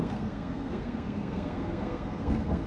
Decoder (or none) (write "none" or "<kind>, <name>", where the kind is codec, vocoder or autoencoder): codec, SNAC